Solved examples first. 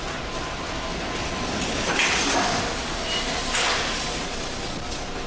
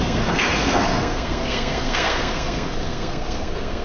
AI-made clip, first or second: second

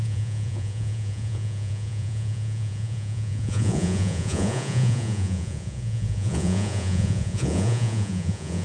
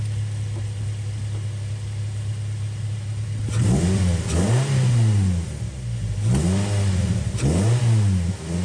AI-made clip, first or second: first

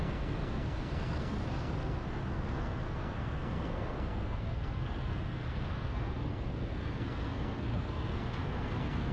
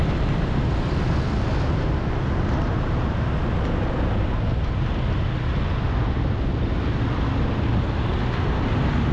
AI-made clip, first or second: first